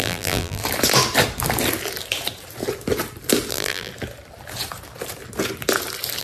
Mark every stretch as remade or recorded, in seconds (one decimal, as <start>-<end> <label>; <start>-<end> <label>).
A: 0.0-0.6 remade; 0.6-3.5 recorded; 3.5-3.9 remade; 3.9-6.2 recorded